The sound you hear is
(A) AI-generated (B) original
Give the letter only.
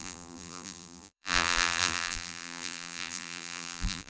A